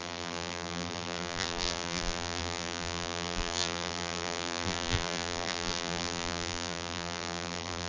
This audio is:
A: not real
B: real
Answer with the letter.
A